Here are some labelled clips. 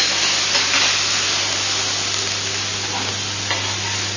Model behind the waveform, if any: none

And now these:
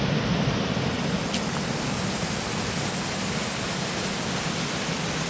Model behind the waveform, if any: none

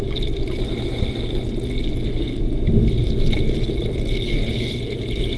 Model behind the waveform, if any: none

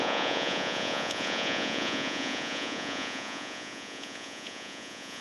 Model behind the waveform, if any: vocoder, Vocos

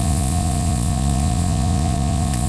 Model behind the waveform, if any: vocoder, Vocos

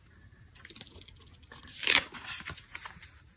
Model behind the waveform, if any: none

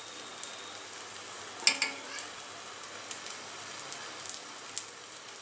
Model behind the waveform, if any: none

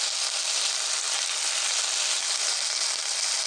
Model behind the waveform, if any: none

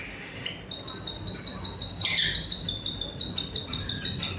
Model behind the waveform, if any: none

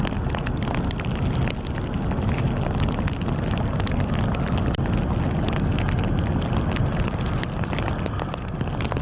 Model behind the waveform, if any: none